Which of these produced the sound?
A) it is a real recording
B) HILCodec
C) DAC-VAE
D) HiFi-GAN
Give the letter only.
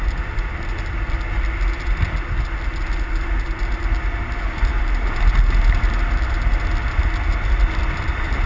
A